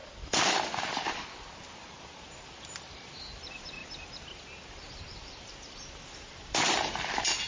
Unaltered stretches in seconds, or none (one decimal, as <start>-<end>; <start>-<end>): 0.0-1.4; 3.8-4.9